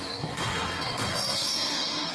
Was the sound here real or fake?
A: fake